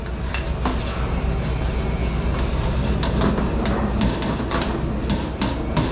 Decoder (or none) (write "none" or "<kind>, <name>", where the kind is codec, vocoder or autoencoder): none